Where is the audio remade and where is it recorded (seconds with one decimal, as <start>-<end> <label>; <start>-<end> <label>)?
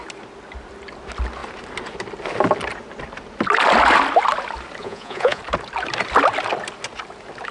0.0-4.8 recorded; 4.8-5.4 remade; 5.4-7.5 recorded